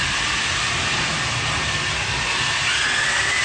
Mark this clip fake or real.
real